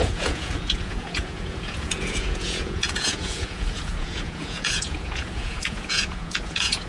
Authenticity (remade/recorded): remade